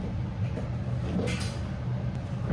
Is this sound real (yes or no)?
yes